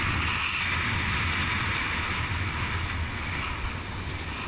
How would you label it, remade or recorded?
recorded